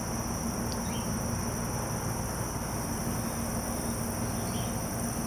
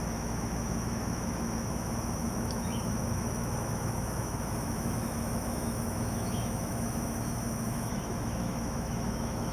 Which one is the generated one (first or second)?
second